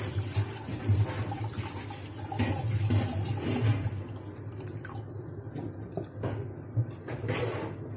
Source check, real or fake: real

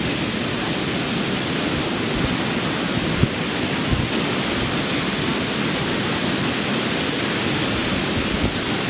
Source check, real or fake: real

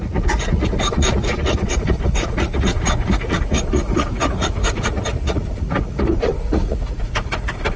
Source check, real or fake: fake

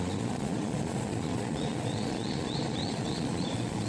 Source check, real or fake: fake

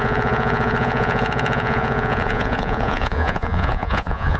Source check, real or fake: fake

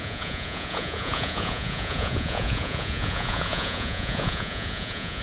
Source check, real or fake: fake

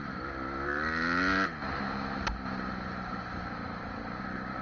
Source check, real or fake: real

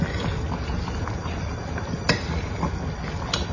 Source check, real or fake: real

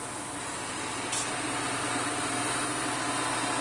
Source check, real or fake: real